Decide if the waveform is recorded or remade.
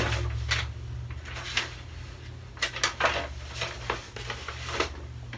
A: recorded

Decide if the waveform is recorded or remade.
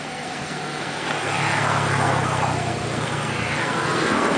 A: remade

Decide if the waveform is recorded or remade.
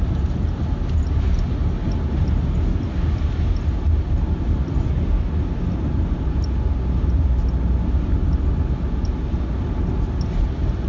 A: recorded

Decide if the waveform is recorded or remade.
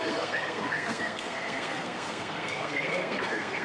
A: remade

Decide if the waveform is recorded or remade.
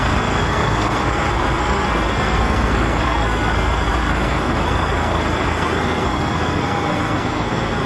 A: remade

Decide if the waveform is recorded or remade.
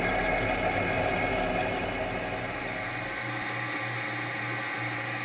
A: recorded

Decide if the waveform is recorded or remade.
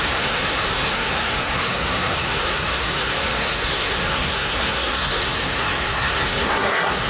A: remade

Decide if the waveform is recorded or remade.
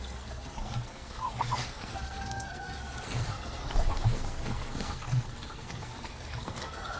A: remade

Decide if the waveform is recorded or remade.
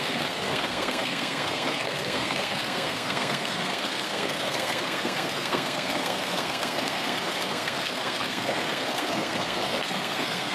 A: remade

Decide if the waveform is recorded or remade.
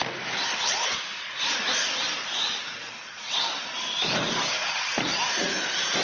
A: recorded